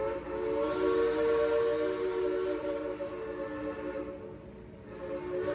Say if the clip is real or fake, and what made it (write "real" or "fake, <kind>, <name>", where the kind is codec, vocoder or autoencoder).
real